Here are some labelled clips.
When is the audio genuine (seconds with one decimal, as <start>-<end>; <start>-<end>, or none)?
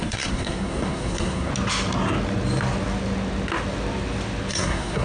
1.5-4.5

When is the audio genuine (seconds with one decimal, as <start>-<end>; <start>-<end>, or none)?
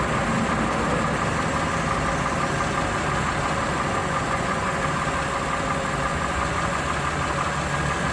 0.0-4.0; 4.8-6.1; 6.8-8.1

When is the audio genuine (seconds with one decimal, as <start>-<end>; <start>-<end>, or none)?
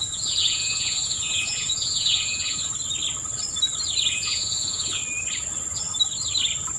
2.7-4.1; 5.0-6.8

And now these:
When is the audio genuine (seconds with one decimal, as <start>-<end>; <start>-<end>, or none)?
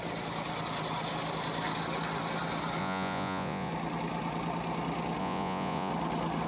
0.0-2.8; 3.7-5.2; 5.9-6.5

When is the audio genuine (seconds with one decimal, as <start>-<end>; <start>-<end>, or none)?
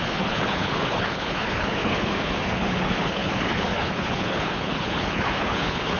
none